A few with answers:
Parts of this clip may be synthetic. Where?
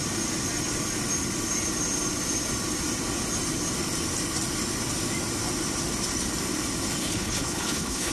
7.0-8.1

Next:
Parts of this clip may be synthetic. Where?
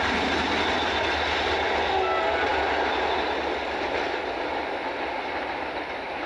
none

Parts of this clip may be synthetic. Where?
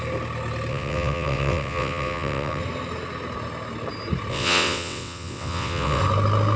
0.7-2.6; 4.3-6.0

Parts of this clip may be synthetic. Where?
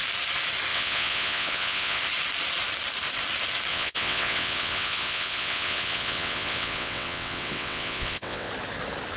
0.7-2.0; 3.7-8.5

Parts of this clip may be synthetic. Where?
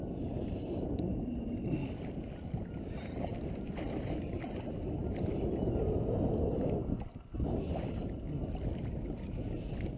none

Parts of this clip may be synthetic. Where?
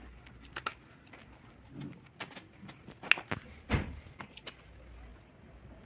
5.1-5.9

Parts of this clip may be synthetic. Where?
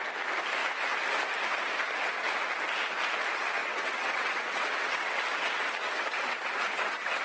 3.6-5.2; 5.8-7.2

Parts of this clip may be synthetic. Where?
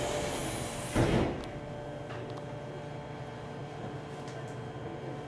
none